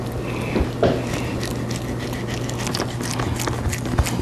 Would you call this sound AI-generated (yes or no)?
no